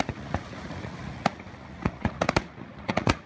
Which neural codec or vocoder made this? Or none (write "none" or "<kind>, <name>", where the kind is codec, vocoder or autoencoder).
vocoder, Vocos